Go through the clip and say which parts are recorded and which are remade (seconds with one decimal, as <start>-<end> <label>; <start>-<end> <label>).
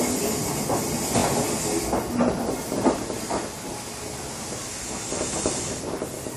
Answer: 0.0-6.4 recorded